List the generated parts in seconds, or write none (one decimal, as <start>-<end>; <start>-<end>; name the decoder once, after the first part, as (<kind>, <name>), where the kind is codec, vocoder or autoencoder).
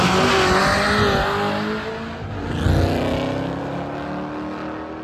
none